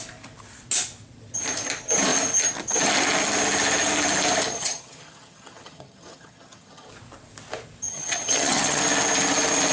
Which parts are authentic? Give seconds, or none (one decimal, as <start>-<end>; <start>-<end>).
0.0-4.5; 6.9-7.9; 8.8-9.7